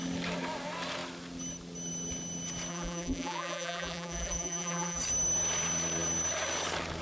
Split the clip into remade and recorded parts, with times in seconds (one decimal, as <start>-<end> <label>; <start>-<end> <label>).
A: 0.0-2.7 recorded; 2.7-5.0 remade; 5.0-7.0 recorded